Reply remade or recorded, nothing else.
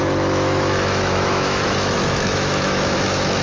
remade